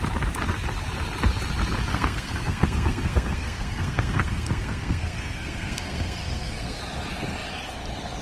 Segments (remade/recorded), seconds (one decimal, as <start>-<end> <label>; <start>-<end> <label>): 0.0-1.9 recorded; 1.9-6.8 remade; 6.8-8.2 recorded